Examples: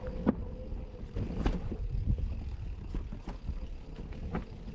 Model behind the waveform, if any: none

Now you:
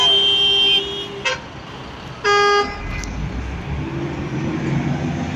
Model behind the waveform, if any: none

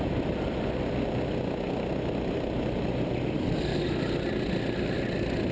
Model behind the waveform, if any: none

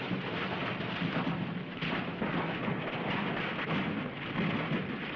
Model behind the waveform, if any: none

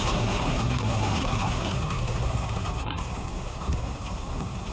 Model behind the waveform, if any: codec, SNAC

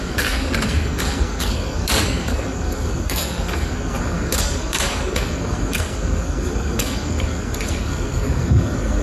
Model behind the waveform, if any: codec, SNAC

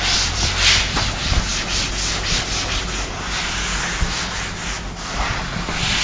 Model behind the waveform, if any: none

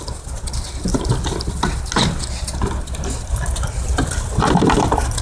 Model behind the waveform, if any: none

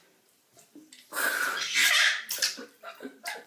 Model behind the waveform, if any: vocoder, BigVGAN v2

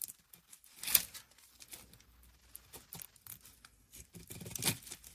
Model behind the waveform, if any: none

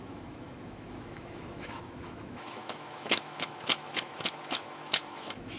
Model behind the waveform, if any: autoencoder, DAC-VAE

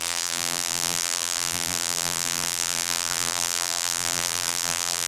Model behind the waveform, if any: vocoder, BigVGAN v2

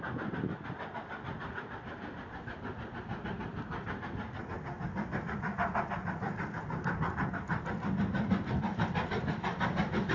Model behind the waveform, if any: none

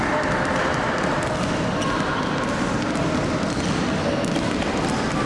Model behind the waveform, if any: none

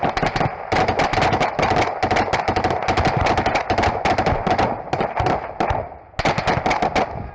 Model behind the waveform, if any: none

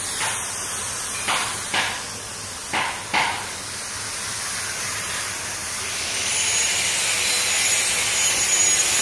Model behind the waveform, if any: none